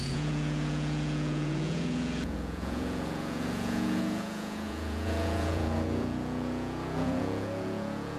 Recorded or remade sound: remade